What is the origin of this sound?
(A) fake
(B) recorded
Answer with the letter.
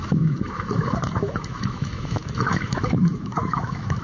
A